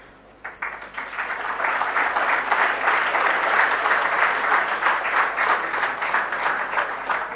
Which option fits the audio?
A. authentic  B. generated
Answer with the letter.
A